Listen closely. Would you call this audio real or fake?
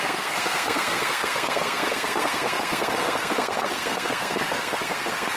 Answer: fake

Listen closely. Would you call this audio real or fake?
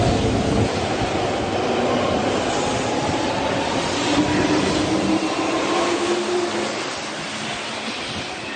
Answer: real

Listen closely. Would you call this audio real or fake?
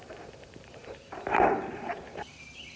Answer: fake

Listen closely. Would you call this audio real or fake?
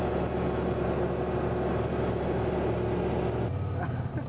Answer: real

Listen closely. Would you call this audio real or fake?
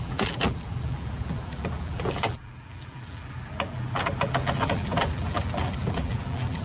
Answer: fake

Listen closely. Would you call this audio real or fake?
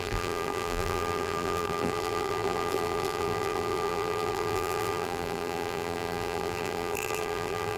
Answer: fake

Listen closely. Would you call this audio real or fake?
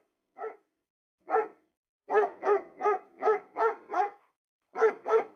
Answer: fake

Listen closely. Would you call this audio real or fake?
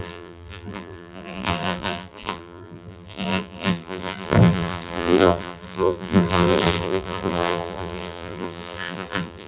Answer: fake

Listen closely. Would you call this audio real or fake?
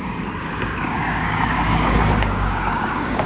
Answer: fake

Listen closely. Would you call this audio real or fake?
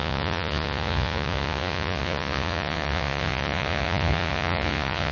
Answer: fake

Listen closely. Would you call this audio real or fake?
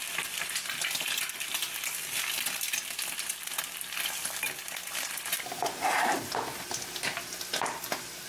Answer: real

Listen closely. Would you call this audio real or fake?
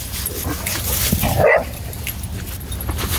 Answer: real